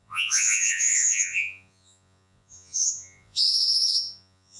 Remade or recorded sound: remade